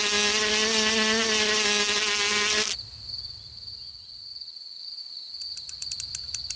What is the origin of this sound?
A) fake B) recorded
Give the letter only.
B